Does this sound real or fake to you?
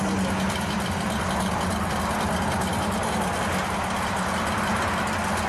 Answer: real